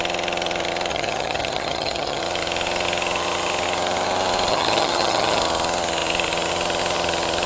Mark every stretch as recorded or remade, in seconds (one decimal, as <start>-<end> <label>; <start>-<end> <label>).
0.0-0.9 recorded; 0.9-2.2 remade; 2.2-4.5 recorded; 4.5-5.4 remade; 5.4-7.5 recorded